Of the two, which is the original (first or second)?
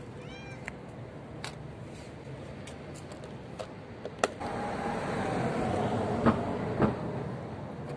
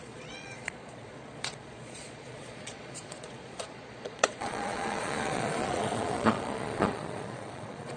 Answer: first